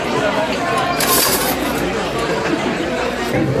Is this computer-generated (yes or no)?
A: yes